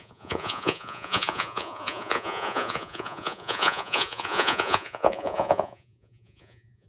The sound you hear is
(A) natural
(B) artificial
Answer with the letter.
B